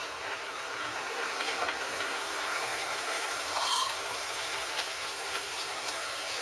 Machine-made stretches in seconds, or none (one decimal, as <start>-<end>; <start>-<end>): 0.0-6.4